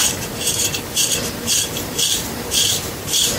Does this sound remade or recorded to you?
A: remade